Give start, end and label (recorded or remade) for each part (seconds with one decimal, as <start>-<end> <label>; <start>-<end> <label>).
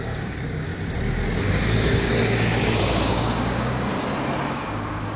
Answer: 0.0-0.7 remade; 0.7-1.4 recorded; 1.4-3.9 remade; 3.9-4.5 recorded; 4.5-5.2 remade